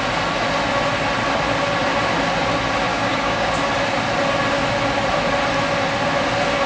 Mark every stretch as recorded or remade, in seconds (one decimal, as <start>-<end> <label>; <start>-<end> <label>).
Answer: 0.0-2.9 recorded; 2.9-3.5 remade; 3.5-6.7 recorded